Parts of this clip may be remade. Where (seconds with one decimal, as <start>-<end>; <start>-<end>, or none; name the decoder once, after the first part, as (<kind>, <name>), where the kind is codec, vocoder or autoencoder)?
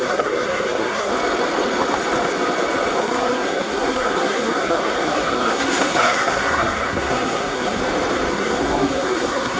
0.0-1.1 (codec, SNAC); 3.0-7.8; 8.3-9.6